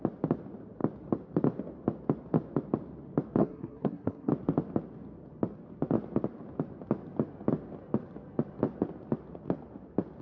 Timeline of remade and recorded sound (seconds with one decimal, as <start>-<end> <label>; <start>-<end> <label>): 0.0-3.4 recorded; 3.4-4.3 remade; 4.3-10.2 recorded